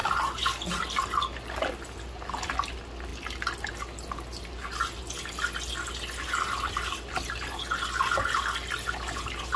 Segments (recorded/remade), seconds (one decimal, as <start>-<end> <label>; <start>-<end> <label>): 0.0-1.2 remade; 1.2-9.6 recorded

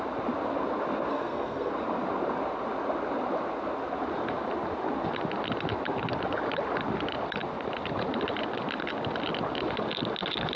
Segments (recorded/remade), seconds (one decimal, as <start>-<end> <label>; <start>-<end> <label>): 0.0-1.1 recorded; 1.1-1.7 remade; 1.7-10.6 recorded

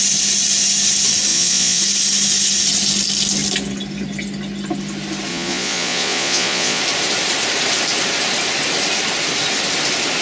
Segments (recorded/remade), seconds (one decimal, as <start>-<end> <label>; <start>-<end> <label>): 0.0-1.3 recorded; 1.3-1.8 remade; 1.8-5.3 recorded; 5.3-6.8 remade; 6.8-10.2 recorded

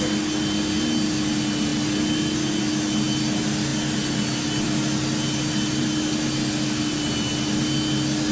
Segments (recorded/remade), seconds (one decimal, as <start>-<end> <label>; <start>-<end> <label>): 0.0-8.3 recorded

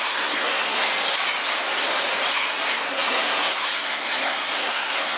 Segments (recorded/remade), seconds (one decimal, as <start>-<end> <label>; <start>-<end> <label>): 0.0-0.9 remade; 0.9-2.3 recorded; 2.3-5.2 remade

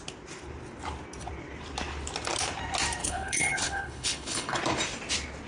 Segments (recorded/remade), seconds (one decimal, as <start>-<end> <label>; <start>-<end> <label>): 0.0-3.0 recorded; 3.0-4.6 remade; 4.6-5.5 recorded